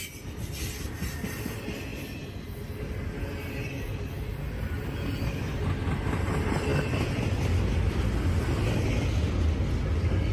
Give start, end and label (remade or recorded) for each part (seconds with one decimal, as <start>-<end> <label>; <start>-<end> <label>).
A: 0.0-10.3 recorded